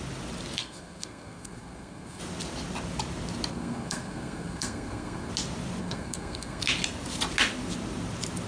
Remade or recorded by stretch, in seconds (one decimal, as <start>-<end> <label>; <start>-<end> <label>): 0.0-0.6 recorded; 0.6-2.2 remade; 2.2-3.5 recorded; 3.5-5.3 remade; 5.3-5.8 recorded; 5.8-6.6 remade; 6.6-8.5 recorded